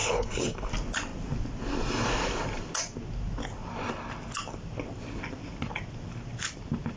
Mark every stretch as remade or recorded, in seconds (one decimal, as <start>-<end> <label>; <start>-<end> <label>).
0.0-0.7 remade; 0.7-7.0 recorded